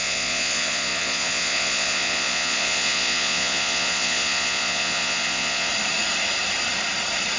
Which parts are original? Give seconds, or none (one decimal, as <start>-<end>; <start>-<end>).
5.7-7.4